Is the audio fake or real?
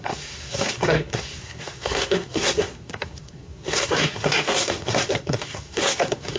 fake